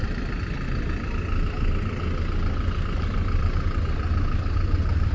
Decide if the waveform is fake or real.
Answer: real